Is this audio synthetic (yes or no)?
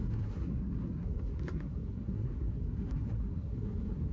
yes